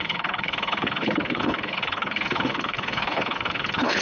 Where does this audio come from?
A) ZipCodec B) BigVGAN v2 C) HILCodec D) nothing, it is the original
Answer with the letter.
C